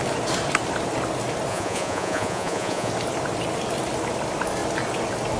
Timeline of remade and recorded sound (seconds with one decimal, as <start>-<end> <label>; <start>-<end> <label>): 0.0-1.5 recorded; 1.5-2.9 remade; 2.9-5.4 recorded